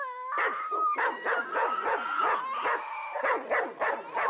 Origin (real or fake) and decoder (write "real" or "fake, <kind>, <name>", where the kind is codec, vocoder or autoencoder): real